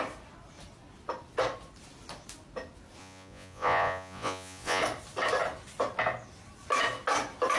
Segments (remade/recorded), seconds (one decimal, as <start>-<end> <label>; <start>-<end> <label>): 0.0-3.0 recorded; 3.0-4.8 remade; 4.8-7.6 recorded